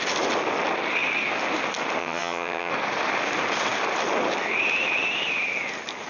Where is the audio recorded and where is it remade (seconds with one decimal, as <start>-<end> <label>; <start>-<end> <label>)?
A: 0.0-2.0 recorded; 2.0-2.7 remade; 2.7-6.1 recorded